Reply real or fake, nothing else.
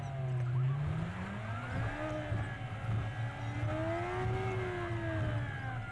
real